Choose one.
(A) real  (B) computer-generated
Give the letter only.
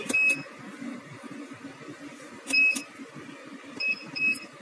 A